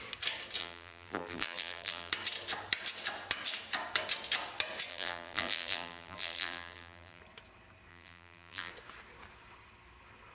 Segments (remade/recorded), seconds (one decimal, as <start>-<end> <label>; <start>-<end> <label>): 0.0-0.6 recorded; 0.6-2.1 remade; 2.1-4.9 recorded; 4.9-7.2 remade; 7.2-7.9 recorded; 7.9-8.7 remade; 8.7-10.3 recorded